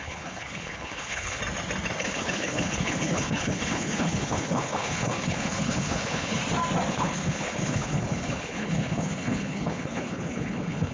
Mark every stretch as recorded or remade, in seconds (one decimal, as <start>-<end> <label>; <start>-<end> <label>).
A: 0.0-1.4 remade; 1.4-2.0 recorded; 2.0-6.4 remade; 6.4-6.9 recorded; 6.9-10.9 remade